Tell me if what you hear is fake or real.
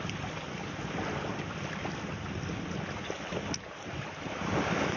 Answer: real